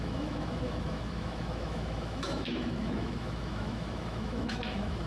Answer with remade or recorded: remade